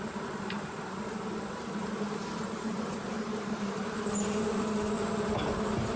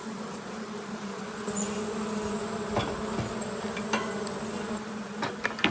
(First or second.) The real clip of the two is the second